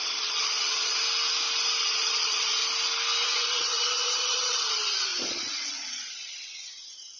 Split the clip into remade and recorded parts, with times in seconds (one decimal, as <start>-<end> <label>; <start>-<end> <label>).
0.0-1.0 remade; 1.0-1.8 recorded; 1.8-2.6 remade; 2.6-3.2 recorded; 3.2-7.2 remade